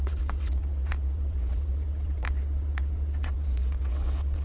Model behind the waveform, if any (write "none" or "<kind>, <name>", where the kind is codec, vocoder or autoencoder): vocoder, WaveNeXt